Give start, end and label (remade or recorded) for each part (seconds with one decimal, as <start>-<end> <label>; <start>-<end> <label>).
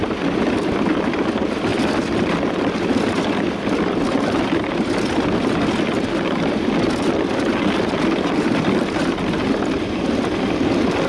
0.0-11.1 recorded